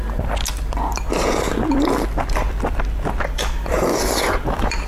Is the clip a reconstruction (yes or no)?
yes